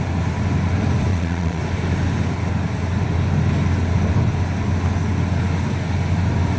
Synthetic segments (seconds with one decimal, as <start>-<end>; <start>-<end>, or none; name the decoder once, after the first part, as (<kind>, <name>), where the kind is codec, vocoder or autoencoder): 1.1-1.6 (vocoder, Vocos)

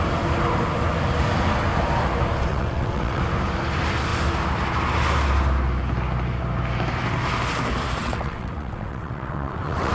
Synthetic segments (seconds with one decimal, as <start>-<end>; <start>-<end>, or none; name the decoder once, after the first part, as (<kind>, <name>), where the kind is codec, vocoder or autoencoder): 2.5-3.2 (vocoder, WaveNeXt); 8.0-9.9

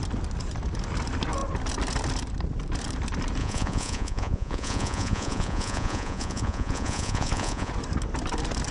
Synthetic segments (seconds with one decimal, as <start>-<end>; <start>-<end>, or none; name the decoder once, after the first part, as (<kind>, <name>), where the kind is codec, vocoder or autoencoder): 3.4-7.7 (vocoder, Vocos)

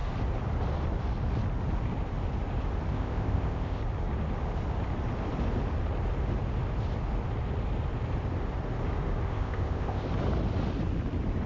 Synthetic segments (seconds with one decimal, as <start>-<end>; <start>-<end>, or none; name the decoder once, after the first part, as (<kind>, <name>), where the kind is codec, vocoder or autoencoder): 2.9-3.8 (codec, ZipCodec); 9.3-10.1

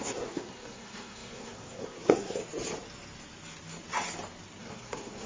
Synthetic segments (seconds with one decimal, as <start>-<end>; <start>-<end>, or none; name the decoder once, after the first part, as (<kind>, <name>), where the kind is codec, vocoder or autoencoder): 0.0-2.4 (codec, SNAC); 4.6-5.3

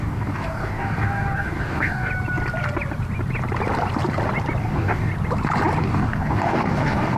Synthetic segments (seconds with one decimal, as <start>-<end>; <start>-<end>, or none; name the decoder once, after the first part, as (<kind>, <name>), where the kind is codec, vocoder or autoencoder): 0.0-2.1 (codec, DAC); 4.6-5.1; 5.8-7.2

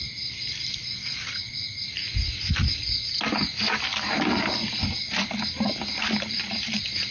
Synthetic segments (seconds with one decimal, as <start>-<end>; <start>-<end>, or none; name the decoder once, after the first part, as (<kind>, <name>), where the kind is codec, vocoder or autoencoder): 0.0-2.0 (vocoder, BigVGAN v2); 6.3-7.1